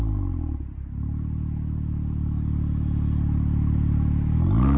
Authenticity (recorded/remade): recorded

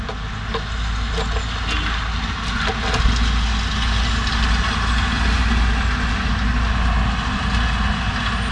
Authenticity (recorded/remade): recorded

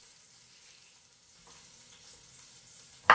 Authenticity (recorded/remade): recorded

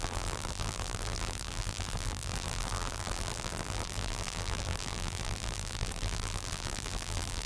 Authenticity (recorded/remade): remade